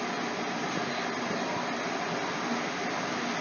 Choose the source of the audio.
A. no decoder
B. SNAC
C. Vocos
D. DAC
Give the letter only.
A